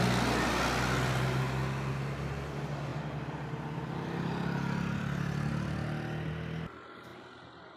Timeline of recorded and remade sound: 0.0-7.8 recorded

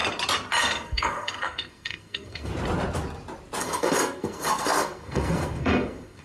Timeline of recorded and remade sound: 0.0-0.6 recorded; 0.6-2.5 remade; 2.5-3.6 recorded; 3.6-6.2 remade

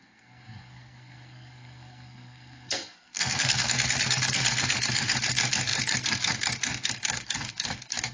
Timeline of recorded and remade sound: 0.0-8.1 remade

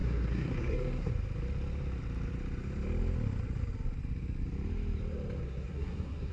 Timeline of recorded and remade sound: 0.0-1.1 remade; 1.1-5.4 recorded; 5.4-6.3 remade